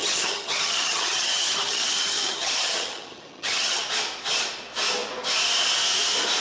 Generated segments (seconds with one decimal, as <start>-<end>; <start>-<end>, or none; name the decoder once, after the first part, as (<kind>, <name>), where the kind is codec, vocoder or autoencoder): 0.0-3.8 (vocoder, HiFi-GAN)

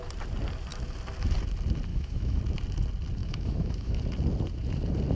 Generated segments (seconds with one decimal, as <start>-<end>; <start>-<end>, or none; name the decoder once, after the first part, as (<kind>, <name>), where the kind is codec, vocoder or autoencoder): 1.9-2.4 (autoencoder, DAC-VAE); 3.2-4.0

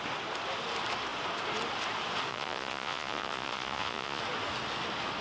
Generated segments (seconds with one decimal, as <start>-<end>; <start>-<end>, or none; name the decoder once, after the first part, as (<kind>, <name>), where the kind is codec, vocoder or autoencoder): 2.3-4.2 (vocoder, Vocos)

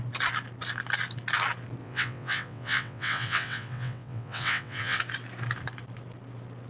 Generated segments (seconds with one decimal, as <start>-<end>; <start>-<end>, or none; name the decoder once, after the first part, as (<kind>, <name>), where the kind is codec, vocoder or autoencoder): 1.8-5.0 (vocoder, WaveNeXt)